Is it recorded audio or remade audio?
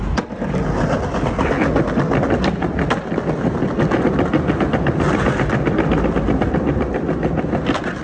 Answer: recorded